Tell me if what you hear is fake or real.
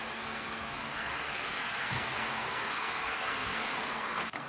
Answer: fake